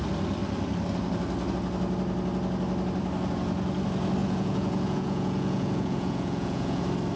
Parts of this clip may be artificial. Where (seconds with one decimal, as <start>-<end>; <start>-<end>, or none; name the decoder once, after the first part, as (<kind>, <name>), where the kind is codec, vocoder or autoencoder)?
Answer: 4.2-6.8 (vocoder, Vocos)